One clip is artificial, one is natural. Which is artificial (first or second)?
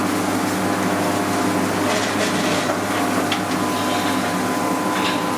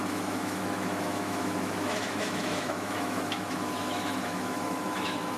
second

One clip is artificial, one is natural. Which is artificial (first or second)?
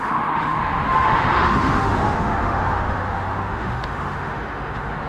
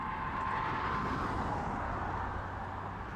first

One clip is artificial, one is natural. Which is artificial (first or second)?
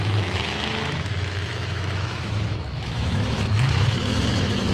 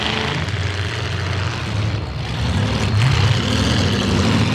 first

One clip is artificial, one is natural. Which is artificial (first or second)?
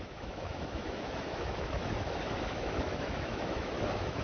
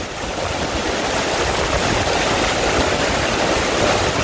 first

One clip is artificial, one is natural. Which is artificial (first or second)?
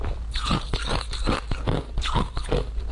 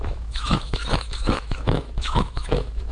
second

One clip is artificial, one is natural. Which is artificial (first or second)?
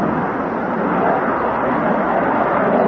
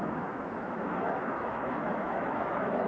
second